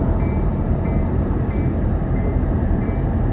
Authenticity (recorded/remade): remade